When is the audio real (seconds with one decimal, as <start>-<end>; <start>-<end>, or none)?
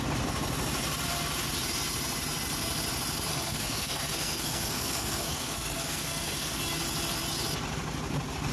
0.0-3.3; 6.6-8.5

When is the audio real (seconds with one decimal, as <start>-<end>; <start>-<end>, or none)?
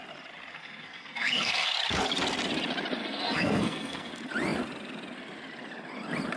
0.0-0.5; 1.7-3.0; 4.1-6.4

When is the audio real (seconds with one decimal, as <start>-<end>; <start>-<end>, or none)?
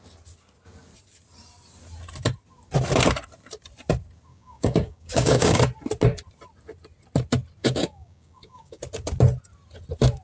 0.0-4.3; 5.6-7.6; 8.8-10.2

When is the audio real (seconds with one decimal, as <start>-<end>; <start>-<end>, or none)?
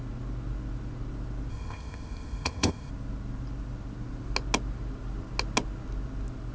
0.0-1.5; 2.9-6.5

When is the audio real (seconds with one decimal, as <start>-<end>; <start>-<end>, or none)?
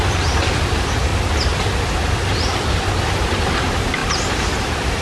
1.1-2.2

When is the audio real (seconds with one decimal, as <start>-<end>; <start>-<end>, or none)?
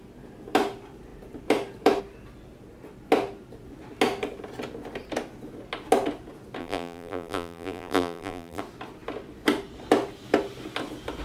0.0-6.6; 8.6-11.2